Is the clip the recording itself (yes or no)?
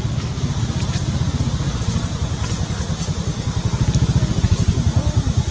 yes